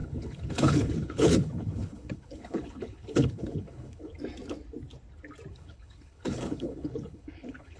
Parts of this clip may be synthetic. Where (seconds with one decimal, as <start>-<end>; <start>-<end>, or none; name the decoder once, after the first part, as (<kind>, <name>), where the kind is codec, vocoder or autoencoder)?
0.0-4.1 (codec, HILCodec); 5.5-7.8